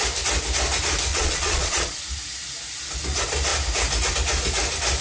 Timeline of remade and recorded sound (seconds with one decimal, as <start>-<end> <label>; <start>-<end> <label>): 0.0-1.1 recorded; 1.1-2.0 remade; 2.0-5.0 recorded